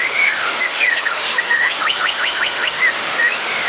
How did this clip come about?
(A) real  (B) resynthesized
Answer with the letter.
B